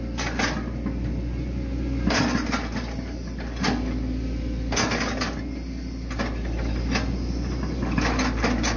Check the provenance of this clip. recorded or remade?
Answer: recorded